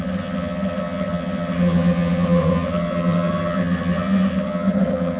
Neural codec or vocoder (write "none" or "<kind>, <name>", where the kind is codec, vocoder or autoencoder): vocoder, HiFi-GAN